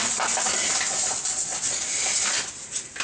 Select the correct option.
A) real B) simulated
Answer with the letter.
A